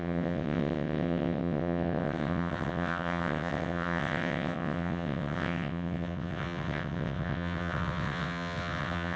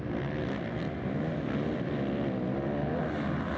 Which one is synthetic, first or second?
first